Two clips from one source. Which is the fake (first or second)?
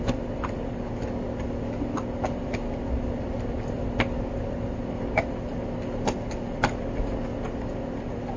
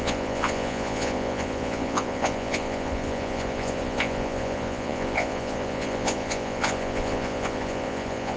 second